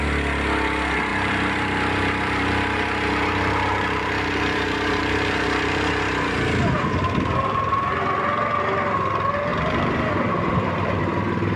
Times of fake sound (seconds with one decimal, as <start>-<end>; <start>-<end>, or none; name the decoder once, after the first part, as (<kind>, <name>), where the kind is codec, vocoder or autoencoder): 1.1-6.0 (vocoder, BigVGAN v2); 9.5-11.0